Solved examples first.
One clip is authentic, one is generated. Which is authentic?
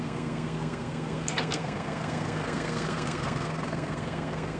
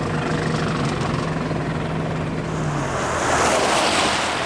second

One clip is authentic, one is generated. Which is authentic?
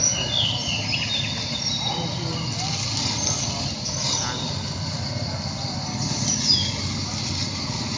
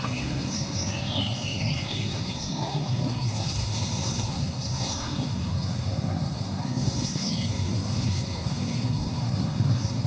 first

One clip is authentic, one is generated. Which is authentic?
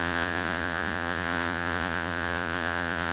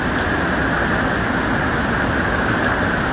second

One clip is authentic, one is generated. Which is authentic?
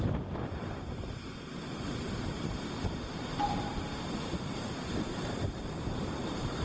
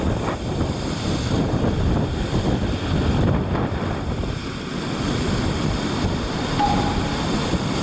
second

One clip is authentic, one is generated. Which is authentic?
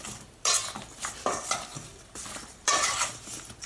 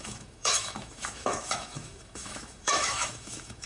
first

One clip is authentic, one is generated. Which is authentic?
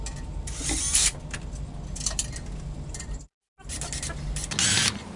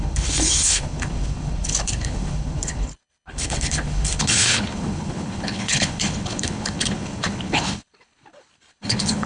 first